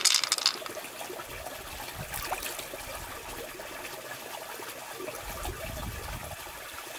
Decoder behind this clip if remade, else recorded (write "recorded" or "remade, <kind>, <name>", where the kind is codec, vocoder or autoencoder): recorded